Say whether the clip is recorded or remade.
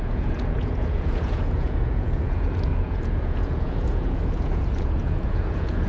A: remade